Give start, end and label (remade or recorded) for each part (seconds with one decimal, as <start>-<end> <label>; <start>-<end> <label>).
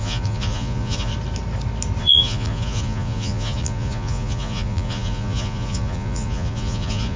0.0-1.1 remade; 1.1-2.0 recorded; 2.0-7.2 remade